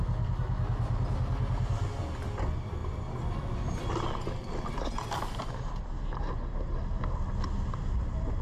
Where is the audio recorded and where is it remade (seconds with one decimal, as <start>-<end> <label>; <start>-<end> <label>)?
0.0-8.4 recorded